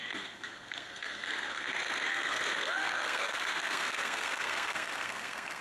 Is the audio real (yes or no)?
no